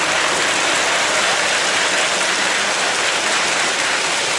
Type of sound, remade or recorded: recorded